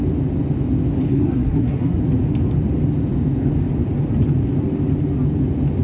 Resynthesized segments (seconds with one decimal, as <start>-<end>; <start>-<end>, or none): 1.1-2.0